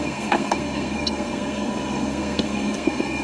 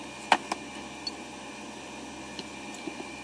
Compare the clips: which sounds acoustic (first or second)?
second